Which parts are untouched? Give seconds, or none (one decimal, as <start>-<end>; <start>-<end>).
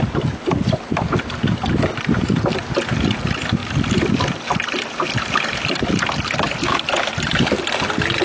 0.0-3.6; 7.7-8.2